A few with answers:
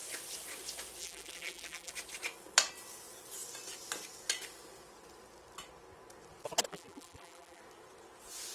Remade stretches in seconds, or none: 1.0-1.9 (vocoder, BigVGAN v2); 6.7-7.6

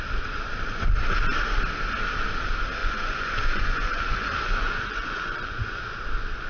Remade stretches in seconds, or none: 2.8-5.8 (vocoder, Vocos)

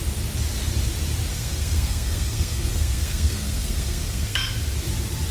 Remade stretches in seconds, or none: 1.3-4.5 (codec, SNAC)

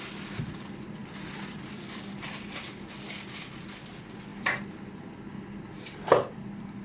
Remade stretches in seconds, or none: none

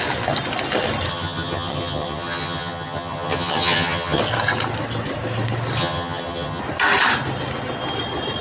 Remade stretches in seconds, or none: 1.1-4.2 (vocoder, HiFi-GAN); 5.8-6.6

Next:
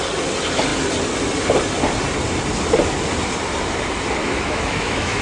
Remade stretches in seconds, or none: 4.2-5.2 (autoencoder, DAC-VAE)